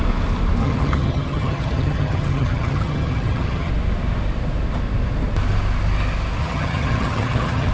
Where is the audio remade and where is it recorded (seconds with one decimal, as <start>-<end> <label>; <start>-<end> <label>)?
0.0-0.6 recorded; 0.6-3.7 remade; 3.7-6.4 recorded; 6.4-7.7 remade